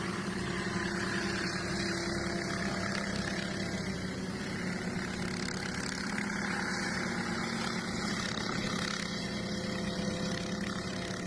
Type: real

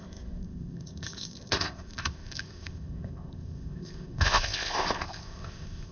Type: fake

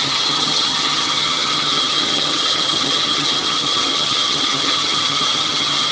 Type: fake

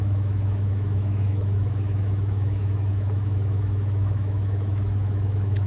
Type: fake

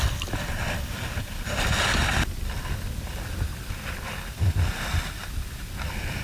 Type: real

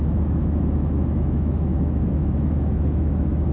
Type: fake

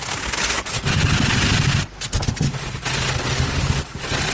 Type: real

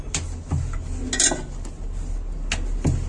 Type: real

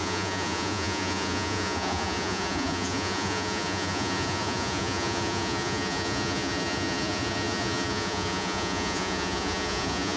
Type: fake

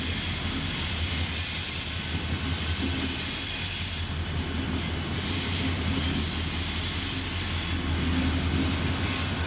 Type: real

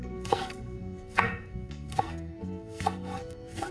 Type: fake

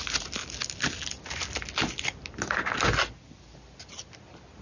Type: real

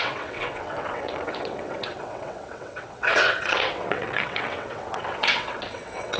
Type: fake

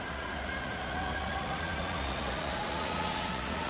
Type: fake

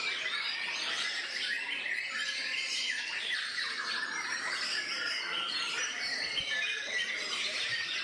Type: fake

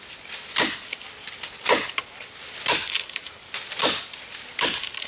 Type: real